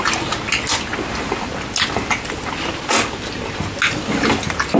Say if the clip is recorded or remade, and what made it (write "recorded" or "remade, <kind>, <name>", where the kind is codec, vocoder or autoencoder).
recorded